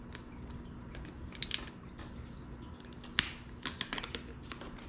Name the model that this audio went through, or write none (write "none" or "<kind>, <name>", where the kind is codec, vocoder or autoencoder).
none